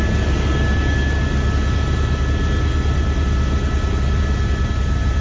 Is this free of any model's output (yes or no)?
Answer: yes